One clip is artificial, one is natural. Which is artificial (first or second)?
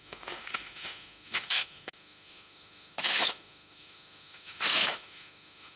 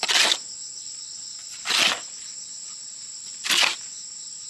first